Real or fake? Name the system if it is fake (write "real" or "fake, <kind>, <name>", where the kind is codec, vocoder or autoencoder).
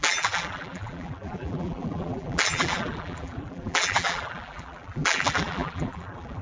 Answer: fake, vocoder, BigVGAN v2